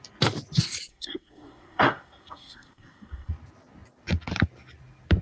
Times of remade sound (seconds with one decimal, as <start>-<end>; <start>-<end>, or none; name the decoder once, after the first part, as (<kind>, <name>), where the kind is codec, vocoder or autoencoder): 0.9-3.3 (codec, SNAC)